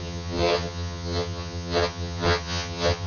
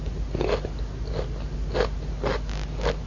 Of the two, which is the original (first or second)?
second